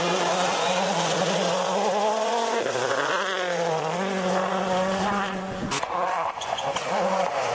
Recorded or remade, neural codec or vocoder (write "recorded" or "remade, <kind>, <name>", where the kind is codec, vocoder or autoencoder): remade, vocoder, Vocos